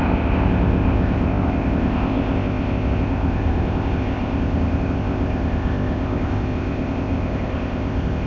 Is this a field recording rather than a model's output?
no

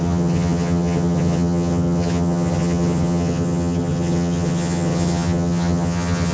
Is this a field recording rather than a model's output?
no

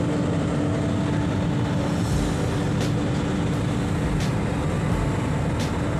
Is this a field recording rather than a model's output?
yes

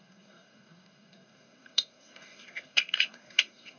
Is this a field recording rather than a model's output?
no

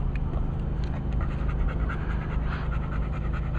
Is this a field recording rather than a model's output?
yes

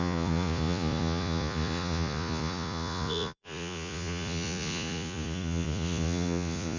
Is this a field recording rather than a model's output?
no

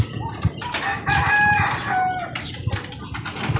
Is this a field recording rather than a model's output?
yes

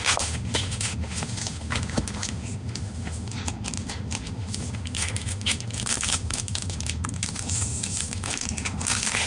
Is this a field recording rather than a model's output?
no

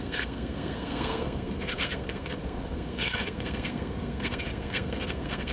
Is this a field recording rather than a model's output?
no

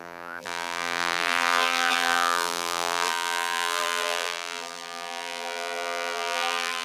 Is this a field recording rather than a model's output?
no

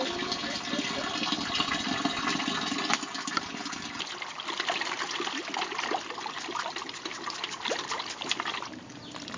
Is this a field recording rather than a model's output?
yes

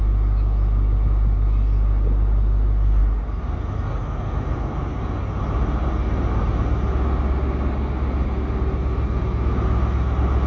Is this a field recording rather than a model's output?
yes